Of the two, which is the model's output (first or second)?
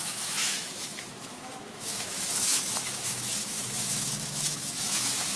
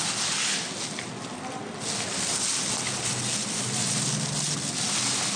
first